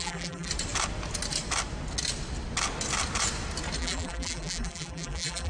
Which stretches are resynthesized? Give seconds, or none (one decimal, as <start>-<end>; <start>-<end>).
0.0-0.5; 3.8-5.5